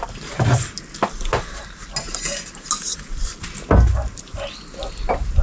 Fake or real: real